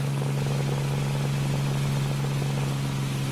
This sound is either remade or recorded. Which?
recorded